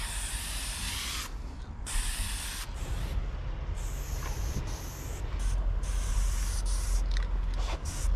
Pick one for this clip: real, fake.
real